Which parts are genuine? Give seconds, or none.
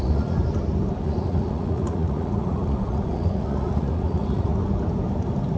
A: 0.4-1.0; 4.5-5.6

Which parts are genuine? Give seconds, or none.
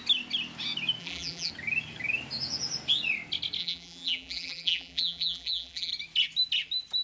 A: 0.0-1.0; 1.5-3.6; 5.9-7.0